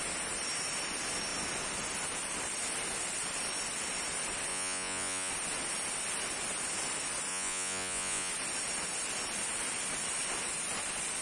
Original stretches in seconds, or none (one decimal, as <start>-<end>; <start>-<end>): 0.0-4.5; 5.3-7.3; 8.3-11.2